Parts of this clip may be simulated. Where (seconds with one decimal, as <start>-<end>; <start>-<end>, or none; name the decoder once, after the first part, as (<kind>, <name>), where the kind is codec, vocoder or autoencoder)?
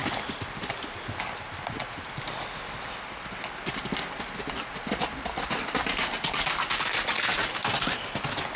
none